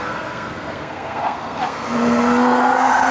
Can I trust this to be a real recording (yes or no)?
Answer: no